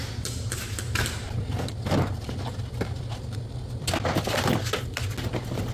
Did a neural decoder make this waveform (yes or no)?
no